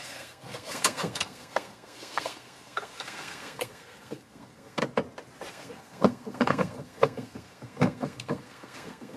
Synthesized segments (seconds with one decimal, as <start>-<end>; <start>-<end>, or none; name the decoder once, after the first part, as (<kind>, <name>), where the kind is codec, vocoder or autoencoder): 0.0-4.8 (codec, SNAC); 5.5-9.2

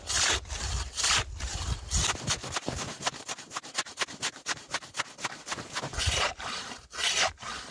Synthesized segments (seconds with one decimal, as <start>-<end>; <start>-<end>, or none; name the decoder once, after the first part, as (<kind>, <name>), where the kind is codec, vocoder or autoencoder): none

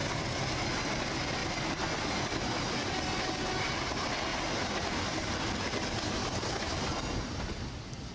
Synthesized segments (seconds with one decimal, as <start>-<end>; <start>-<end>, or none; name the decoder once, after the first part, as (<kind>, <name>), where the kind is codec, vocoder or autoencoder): none

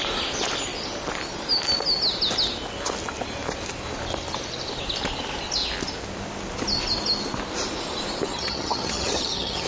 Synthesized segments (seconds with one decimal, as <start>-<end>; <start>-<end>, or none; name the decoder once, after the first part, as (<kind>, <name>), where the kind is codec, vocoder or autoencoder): 8.3-9.7 (vocoder, HiFi-GAN)